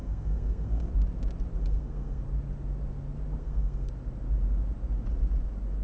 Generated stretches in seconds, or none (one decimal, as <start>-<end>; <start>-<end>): 0.0-0.9; 1.6-2.2; 3.4-3.9